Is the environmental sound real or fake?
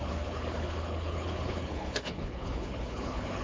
fake